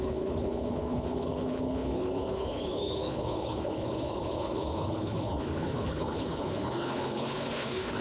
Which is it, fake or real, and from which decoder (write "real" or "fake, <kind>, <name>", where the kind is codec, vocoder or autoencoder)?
fake, codec, HILCodec